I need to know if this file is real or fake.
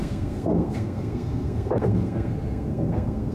fake